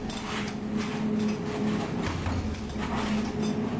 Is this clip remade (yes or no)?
no